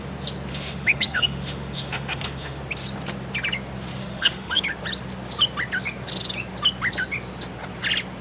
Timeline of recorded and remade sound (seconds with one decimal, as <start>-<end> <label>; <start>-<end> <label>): 0.0-0.5 recorded; 0.5-2.6 remade; 2.6-4.0 recorded; 4.0-4.6 remade; 4.6-8.2 recorded